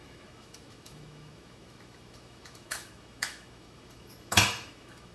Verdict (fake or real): fake